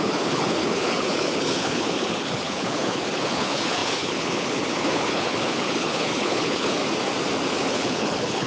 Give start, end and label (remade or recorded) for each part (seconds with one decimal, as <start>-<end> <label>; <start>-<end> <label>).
0.0-6.8 remade; 6.8-7.5 recorded; 7.5-8.5 remade